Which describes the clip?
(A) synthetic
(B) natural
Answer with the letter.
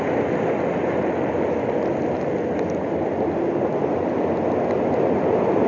B